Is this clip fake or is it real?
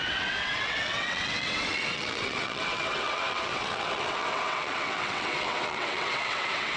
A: fake